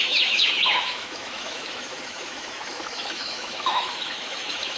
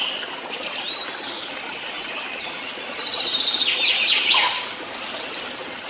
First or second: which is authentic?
second